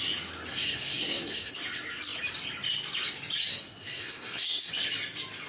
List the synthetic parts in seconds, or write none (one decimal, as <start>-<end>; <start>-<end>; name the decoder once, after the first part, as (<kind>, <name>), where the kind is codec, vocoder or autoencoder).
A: 0.5-1.5 (codec, SNAC); 3.5-4.7